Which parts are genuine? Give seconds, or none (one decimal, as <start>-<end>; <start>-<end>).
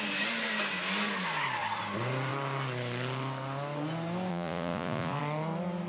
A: 0.0-4.3; 5.2-5.9